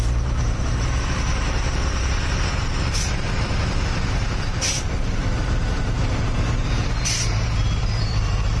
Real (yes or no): no